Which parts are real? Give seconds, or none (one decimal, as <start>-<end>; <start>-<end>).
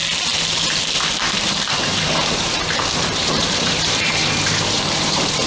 0.0-1.7